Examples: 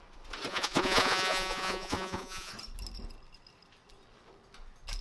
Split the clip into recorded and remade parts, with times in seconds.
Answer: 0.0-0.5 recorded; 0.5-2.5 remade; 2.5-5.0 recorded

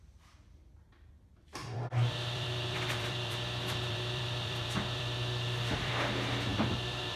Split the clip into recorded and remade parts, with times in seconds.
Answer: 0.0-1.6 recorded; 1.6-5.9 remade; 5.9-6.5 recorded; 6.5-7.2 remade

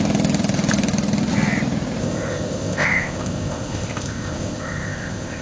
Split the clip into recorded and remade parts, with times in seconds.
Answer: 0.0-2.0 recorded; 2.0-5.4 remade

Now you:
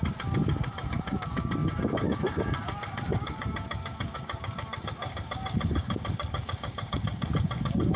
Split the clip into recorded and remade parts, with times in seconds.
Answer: 0.0-8.0 remade